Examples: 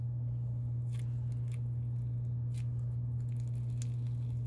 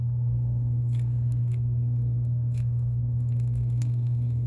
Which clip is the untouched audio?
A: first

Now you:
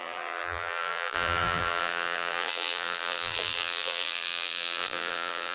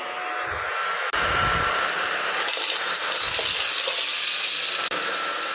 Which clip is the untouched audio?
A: second